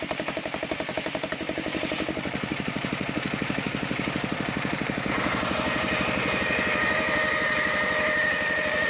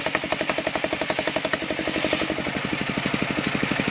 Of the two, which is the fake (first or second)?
first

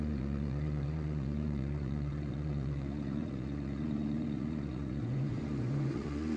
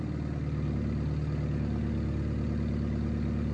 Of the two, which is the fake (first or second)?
first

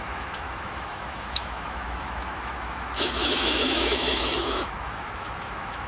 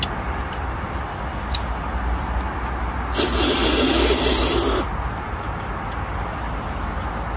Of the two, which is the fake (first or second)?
first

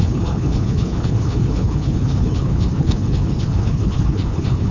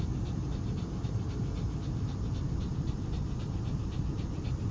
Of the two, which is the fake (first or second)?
first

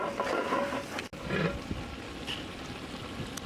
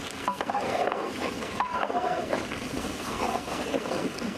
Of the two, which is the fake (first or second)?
second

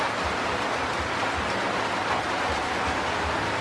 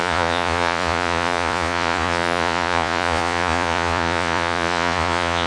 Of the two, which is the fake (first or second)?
second